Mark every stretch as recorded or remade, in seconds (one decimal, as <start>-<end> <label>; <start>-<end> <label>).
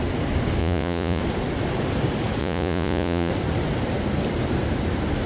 0.0-0.6 recorded; 0.6-1.2 remade; 1.2-2.4 recorded; 2.4-3.3 remade; 3.3-5.3 recorded